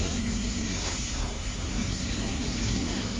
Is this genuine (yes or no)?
no